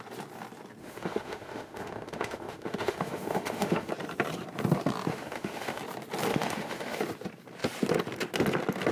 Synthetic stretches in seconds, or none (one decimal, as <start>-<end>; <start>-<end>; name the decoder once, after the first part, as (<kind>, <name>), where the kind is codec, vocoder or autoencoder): 0.8-3.9 (autoencoder, DAC-VAE); 5.1-5.8; 6.3-7.0